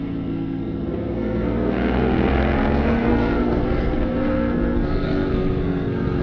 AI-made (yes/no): yes